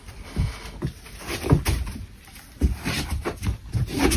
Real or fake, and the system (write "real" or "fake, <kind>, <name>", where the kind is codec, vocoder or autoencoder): real